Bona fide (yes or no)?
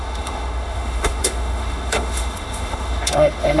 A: no